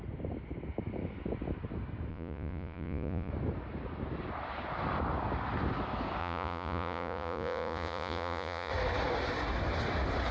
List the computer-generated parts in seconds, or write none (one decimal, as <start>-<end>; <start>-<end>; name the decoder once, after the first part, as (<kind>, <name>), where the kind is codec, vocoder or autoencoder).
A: 2.1-3.3 (vocoder, Vocos); 6.2-8.7